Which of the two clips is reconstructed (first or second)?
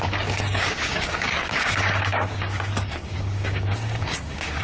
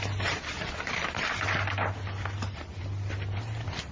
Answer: first